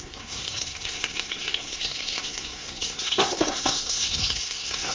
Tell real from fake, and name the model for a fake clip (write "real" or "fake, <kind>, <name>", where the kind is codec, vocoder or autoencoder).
fake, codec, SNAC